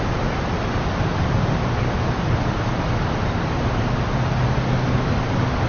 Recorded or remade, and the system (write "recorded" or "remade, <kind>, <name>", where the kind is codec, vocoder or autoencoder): recorded